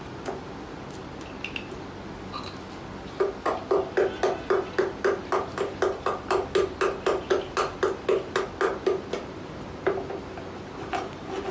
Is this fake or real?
real